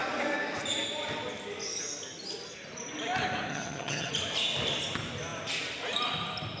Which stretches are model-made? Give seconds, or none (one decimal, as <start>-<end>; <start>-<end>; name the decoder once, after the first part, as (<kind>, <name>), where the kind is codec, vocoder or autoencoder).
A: 3.5-4.1 (vocoder, HiFi-GAN)